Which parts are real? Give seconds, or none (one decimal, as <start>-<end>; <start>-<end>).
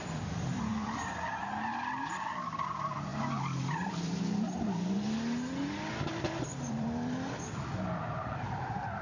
0.7-2.0; 3.1-6.2